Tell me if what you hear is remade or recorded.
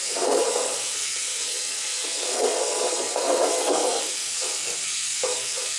remade